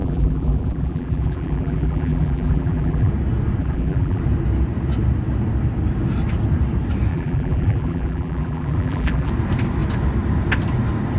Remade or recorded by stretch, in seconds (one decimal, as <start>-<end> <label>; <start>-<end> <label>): 0.0-3.1 remade; 3.1-3.6 recorded; 3.6-4.2 remade; 4.2-7.1 recorded; 7.1-9.3 remade; 9.3-11.2 recorded